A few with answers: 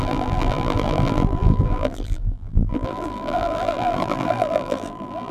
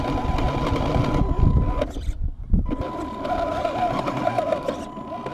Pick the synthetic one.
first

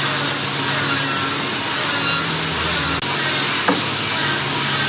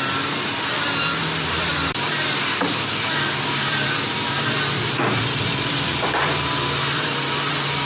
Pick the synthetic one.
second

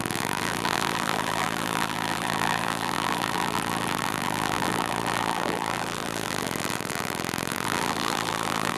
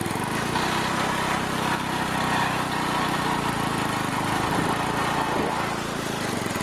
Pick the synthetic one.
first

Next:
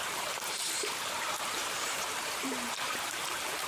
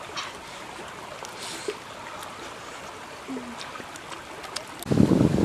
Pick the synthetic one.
first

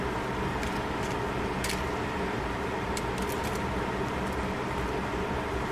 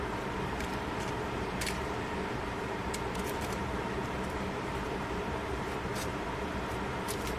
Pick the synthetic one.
second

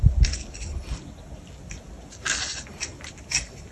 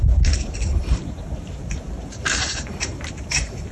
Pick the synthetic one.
second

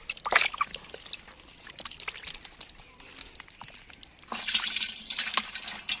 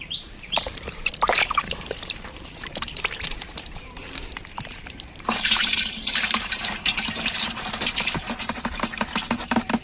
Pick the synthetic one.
second